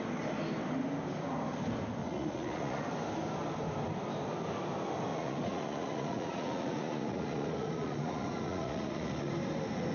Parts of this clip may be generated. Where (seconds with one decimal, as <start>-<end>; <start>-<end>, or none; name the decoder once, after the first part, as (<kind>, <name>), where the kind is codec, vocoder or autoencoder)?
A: 2.0-2.8 (vocoder, Vocos); 5.1-9.3